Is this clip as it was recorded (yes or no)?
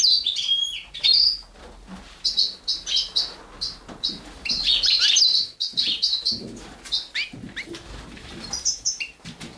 yes